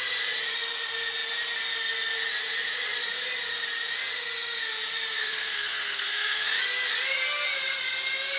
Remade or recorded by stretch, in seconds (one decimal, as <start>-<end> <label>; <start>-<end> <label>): 0.0-5.2 recorded; 5.2-6.6 remade; 6.6-8.4 recorded